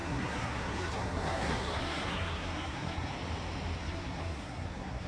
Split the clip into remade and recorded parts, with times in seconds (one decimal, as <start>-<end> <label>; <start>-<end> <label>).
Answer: 0.0-3.1 remade; 3.1-3.8 recorded; 3.8-5.1 remade